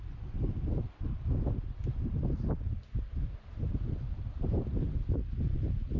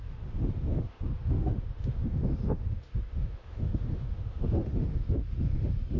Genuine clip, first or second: first